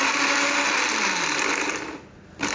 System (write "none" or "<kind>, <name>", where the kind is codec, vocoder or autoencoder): none